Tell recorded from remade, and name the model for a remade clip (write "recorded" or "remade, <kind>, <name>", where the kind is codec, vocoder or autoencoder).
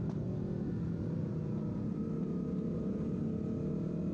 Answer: recorded